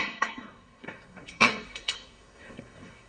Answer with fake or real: fake